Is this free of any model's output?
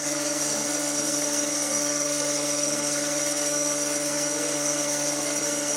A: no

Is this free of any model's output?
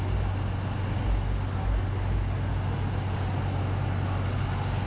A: yes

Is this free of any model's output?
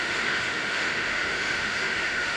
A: no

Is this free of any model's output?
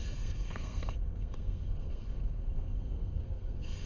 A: no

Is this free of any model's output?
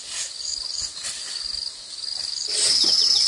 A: yes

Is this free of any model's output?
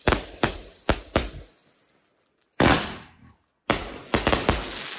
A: yes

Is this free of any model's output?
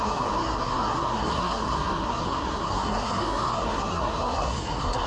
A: no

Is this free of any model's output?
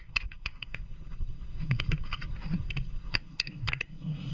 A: no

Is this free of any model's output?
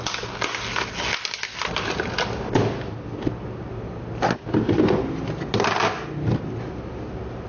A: yes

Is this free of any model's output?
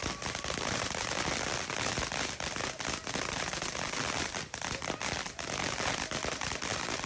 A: no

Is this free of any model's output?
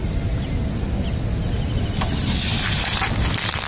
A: yes